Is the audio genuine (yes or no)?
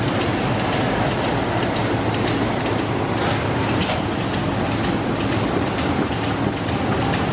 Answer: yes